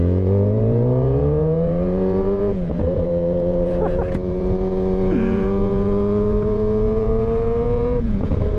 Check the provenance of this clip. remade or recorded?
remade